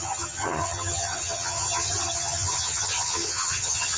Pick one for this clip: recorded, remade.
remade